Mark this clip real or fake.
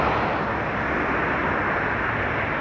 real